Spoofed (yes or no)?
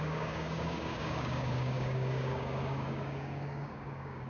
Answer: yes